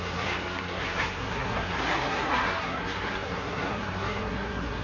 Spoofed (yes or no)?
yes